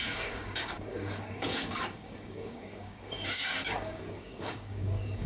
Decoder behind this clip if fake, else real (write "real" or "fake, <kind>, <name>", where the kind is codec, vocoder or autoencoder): fake, codec, DAC